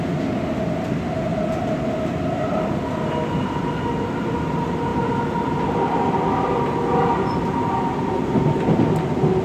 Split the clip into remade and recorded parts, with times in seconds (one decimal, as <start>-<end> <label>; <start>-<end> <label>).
0.0-1.3 recorded; 1.3-3.5 remade; 3.5-9.4 recorded